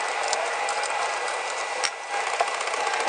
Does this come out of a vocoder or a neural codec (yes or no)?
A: no